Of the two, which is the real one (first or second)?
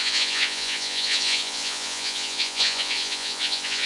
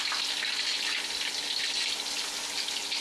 second